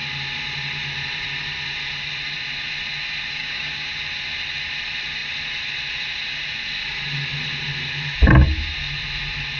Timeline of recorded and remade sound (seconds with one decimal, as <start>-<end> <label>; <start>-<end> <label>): 0.0-3.4 recorded; 3.4-3.9 remade; 3.9-9.6 recorded